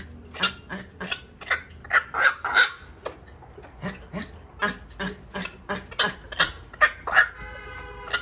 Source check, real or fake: real